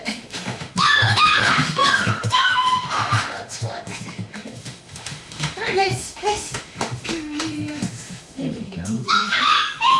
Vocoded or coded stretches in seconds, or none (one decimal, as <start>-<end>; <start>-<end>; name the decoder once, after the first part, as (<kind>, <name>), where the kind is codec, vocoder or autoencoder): 0.0-10.0 (autoencoder, DAC-VAE)